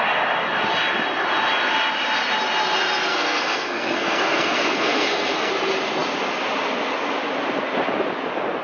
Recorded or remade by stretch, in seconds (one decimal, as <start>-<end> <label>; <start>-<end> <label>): 0.0-3.1 recorded; 3.1-5.5 remade; 5.5-8.6 recorded